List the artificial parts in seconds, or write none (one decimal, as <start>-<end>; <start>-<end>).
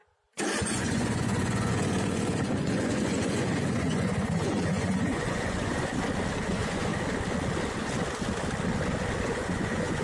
0.6-5.9; 6.4-6.9; 9.2-10.0